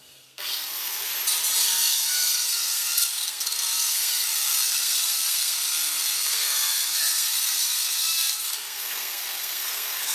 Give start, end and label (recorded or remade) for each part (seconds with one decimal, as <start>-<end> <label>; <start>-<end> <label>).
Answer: 0.0-1.1 remade; 1.1-1.6 recorded; 1.6-10.1 remade